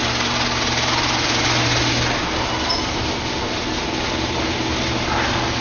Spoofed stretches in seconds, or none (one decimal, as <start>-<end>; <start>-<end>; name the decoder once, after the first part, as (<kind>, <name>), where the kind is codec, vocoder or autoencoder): none